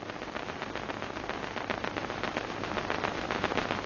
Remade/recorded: remade